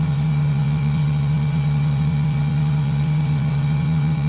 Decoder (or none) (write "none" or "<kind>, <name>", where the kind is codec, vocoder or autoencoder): vocoder, WaveNeXt